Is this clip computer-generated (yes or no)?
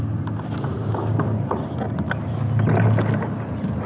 no